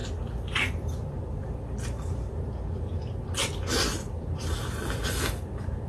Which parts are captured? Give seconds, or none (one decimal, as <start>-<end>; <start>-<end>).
0.0-5.9